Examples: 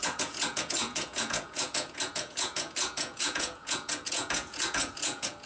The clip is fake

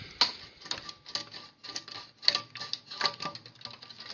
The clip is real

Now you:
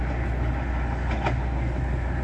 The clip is real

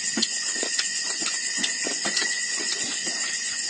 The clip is fake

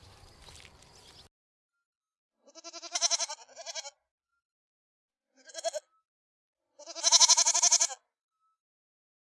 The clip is real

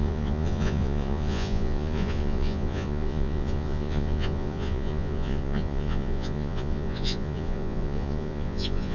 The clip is fake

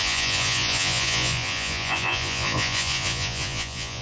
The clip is fake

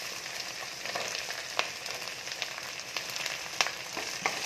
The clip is real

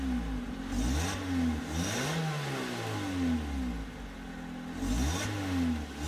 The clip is real